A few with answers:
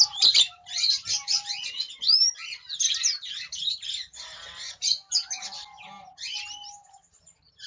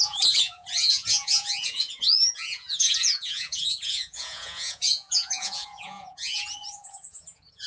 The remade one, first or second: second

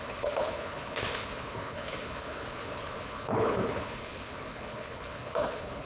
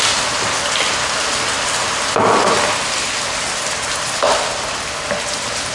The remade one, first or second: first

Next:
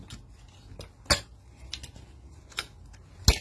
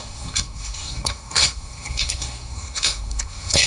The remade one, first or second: second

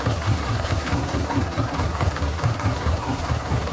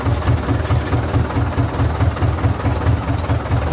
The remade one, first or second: first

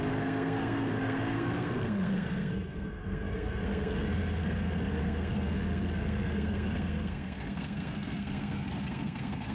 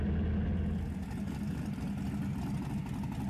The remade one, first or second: first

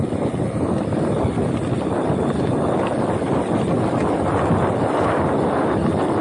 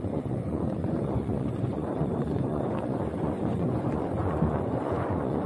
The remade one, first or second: second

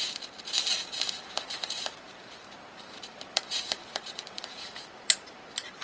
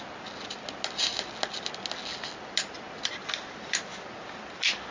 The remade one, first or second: first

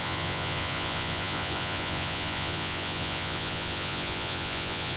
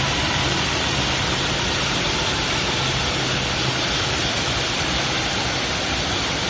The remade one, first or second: first